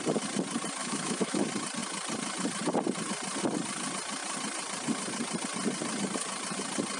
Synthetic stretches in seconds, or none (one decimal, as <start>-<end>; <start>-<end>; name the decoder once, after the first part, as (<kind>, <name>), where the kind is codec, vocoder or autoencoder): 0.8-1.4 (autoencoder, DAC-VAE)